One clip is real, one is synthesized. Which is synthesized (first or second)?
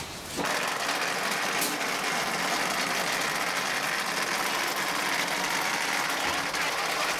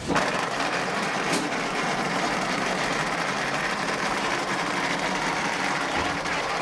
second